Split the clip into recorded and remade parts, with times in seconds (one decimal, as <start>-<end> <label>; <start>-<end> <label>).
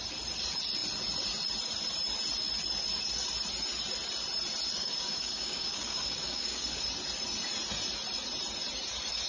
0.0-4.8 recorded; 4.8-6.8 remade; 6.8-9.3 recorded